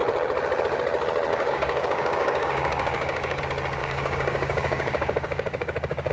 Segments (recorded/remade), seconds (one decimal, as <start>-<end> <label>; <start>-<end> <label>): 0.0-1.3 recorded; 1.3-3.4 remade; 3.4-3.8 recorded; 3.8-6.1 remade